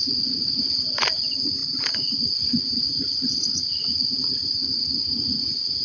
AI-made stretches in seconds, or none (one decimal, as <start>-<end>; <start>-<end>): none

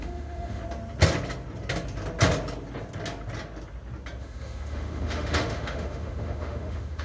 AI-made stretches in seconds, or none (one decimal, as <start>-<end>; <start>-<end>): 0.0-0.6; 4.2-7.0

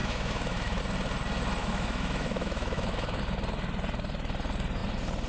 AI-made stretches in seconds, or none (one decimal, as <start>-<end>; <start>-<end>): 0.0-0.8; 1.6-3.2

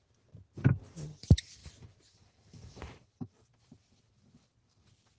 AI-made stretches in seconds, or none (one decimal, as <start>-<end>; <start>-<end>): 1.6-3.6

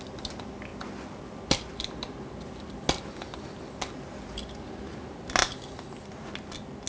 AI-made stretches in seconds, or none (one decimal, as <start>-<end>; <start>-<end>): none